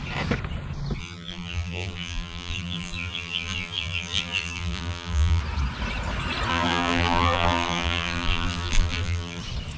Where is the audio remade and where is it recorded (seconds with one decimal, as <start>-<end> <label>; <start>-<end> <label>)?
0.0-1.0 recorded; 1.0-5.4 remade; 5.4-6.5 recorded; 6.5-9.4 remade; 9.4-9.8 recorded